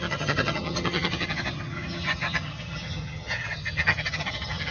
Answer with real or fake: fake